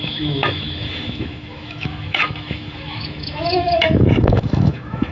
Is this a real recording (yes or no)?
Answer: no